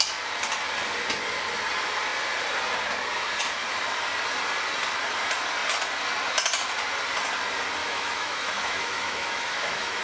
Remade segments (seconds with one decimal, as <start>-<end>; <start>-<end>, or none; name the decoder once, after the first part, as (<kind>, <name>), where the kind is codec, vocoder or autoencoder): 7.8-10.0 (autoencoder, DAC-VAE)